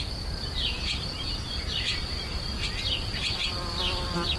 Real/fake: real